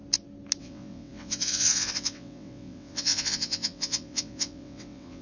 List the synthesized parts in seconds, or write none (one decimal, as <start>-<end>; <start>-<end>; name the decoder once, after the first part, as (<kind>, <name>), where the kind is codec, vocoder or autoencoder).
0.6-5.2 (vocoder, WaveNeXt)